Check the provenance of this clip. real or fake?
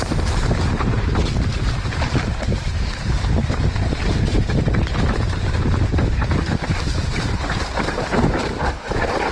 fake